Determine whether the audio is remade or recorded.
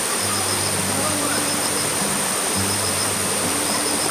remade